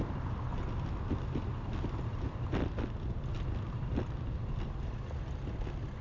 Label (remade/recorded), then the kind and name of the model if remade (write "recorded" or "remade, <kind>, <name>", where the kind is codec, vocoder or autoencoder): recorded